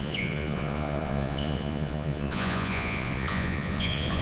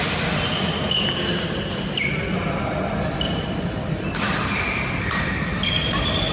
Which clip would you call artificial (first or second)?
first